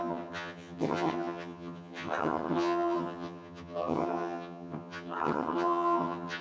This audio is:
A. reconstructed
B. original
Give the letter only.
A